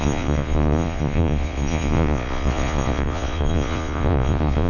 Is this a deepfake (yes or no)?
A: yes